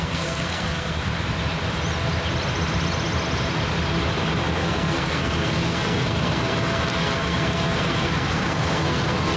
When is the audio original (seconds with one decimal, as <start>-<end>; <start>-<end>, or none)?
1.1-4.4